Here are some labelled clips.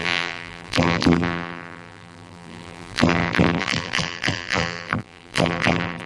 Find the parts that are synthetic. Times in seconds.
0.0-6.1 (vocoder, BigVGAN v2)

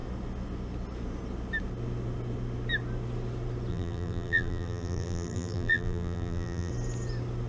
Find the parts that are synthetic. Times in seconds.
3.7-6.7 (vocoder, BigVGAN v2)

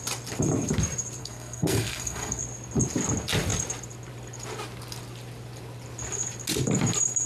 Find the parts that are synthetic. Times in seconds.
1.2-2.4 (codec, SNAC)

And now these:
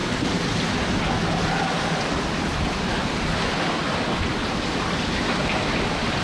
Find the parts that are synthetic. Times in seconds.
none

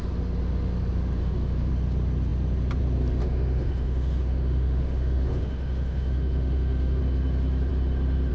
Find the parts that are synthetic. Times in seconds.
1.2-1.7 (autoencoder, DAC-VAE); 3.2-7.0

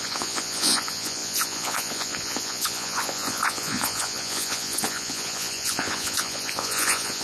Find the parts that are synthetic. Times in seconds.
0.0-7.2 (vocoder, Vocos)

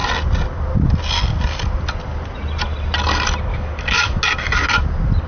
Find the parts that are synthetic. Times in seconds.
3.5-4.2 (codec, DAC)